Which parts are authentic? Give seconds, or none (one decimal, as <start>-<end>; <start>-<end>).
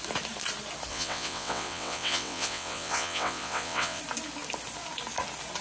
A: 0.0-0.9; 4.0-5.6